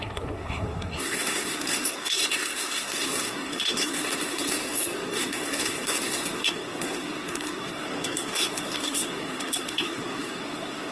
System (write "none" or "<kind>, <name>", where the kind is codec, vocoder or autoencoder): codec, SNAC